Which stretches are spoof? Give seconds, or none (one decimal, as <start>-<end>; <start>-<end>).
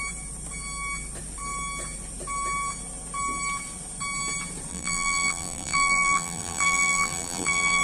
4.7-7.8